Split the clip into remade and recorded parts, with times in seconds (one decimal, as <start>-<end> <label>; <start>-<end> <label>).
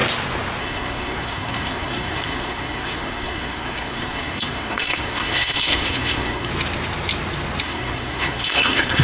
0.0-0.6 recorded; 0.6-6.5 remade; 6.5-7.6 recorded; 7.6-9.0 remade